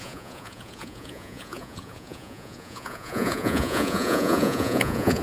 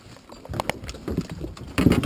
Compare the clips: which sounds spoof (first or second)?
first